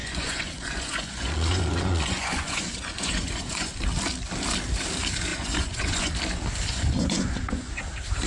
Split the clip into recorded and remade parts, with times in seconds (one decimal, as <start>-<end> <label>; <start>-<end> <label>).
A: 0.0-3.8 remade; 3.8-5.3 recorded; 5.3-6.1 remade; 6.1-6.7 recorded; 6.7-7.8 remade; 7.8-8.3 recorded